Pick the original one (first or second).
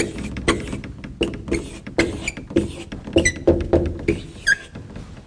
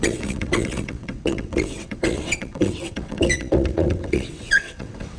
first